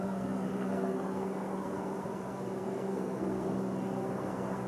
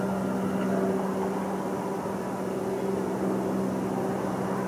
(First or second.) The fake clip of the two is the first